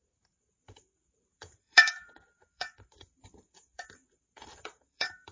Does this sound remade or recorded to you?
remade